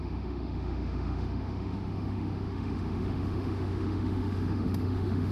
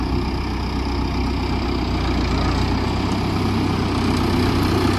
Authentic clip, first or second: second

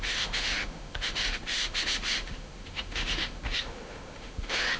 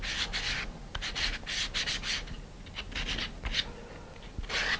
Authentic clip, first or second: second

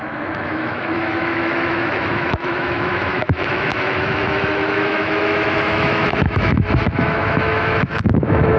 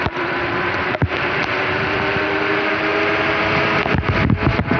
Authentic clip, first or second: second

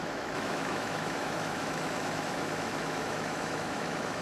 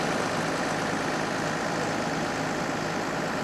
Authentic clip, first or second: second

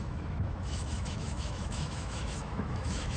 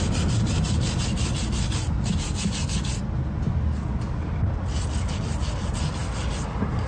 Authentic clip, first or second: second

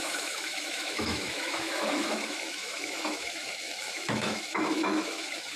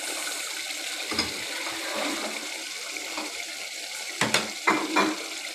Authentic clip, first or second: second